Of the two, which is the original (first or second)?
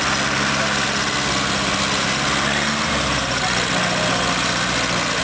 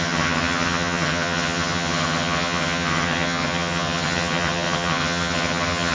first